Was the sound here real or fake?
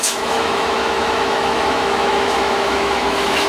fake